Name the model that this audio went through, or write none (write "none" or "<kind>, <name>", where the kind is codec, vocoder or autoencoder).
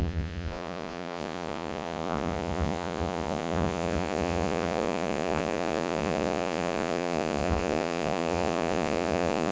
vocoder, Vocos